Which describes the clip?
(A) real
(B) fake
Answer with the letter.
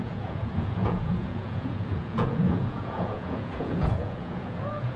B